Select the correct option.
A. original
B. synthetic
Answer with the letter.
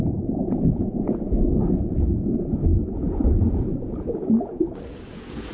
B